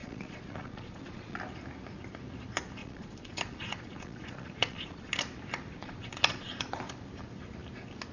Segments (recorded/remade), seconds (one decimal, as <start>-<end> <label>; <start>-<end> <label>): 0.0-1.4 remade; 1.4-2.8 recorded; 2.8-5.1 remade; 5.1-5.8 recorded; 5.8-6.8 remade; 6.8-8.1 recorded